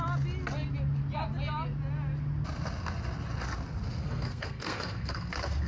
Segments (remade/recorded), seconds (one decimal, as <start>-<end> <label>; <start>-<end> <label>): 0.0-4.0 recorded; 4.0-5.3 remade; 5.3-5.7 recorded